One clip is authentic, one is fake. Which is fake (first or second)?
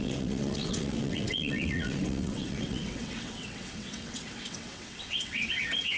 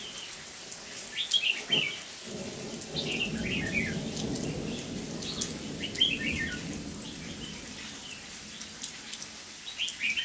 first